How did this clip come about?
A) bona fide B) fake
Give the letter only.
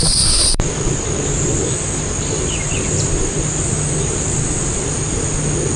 B